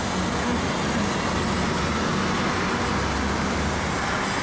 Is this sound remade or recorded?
recorded